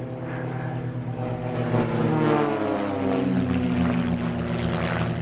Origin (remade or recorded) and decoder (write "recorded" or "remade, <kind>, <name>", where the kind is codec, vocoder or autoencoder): recorded